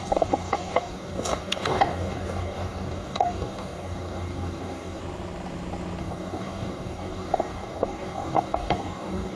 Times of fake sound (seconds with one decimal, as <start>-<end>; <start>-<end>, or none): 0.0-5.0; 6.0-9.4